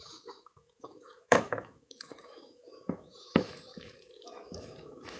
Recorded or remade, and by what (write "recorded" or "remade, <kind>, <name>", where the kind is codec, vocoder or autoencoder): remade, autoencoder, DAC-VAE